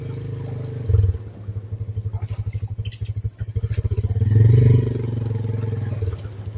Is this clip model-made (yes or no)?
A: no